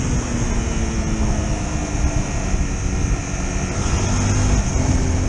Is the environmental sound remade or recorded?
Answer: recorded